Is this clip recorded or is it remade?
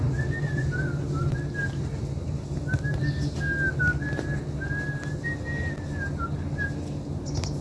recorded